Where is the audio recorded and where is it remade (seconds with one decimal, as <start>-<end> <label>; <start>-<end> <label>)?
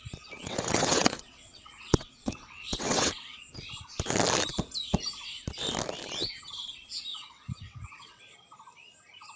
0.0-0.4 recorded; 0.4-3.4 remade; 3.4-7.1 recorded; 7.1-8.2 remade; 8.2-9.4 recorded